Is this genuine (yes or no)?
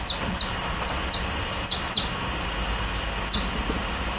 yes